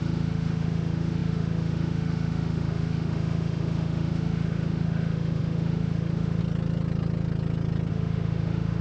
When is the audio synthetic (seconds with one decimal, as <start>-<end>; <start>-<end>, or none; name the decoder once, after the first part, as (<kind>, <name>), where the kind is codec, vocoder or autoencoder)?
0.0-6.4 (autoencoder, DAC-VAE); 7.9-8.8